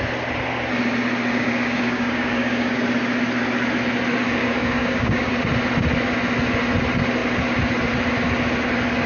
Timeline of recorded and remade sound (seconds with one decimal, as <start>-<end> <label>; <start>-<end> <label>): 0.0-1.3 recorded; 1.3-2.8 remade; 2.8-4.4 recorded; 4.4-5.3 remade; 5.3-9.1 recorded